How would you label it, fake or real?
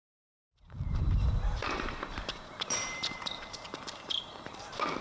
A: fake